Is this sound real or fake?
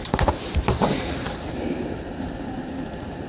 fake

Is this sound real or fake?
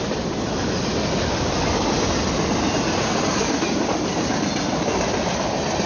real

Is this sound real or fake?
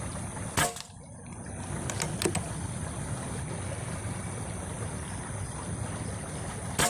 real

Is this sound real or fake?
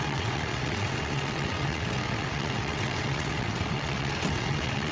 fake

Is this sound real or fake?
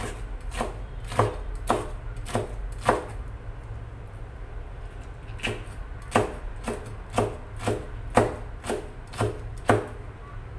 real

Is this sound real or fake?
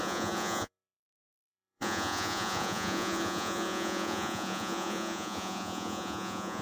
fake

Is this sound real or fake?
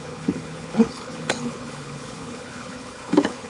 fake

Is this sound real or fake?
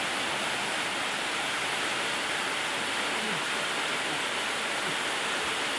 real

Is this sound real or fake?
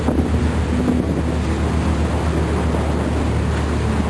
real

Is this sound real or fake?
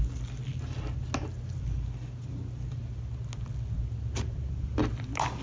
real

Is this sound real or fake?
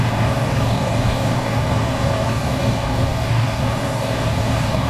fake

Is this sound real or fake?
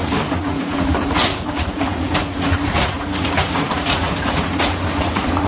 fake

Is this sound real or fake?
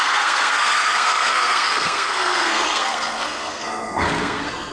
fake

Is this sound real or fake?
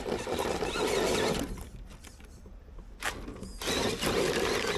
real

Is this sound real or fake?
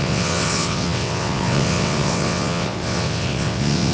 fake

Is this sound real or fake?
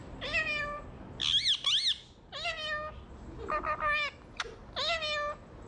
real